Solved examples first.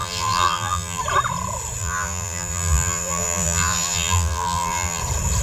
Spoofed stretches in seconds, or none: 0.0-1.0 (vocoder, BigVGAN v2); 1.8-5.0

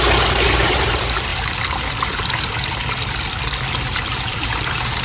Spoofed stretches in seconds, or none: 0.0-1.3 (vocoder, BigVGAN v2); 4.3-5.0

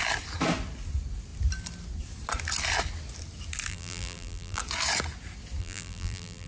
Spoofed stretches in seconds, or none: 3.7-4.6 (vocoder, BigVGAN v2); 5.6-6.5